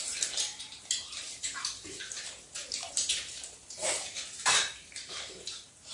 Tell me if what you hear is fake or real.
fake